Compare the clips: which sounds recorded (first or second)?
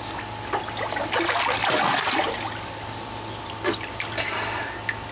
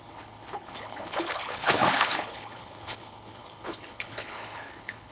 first